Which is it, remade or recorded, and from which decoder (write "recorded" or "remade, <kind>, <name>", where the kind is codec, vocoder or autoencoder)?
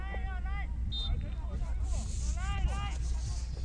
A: recorded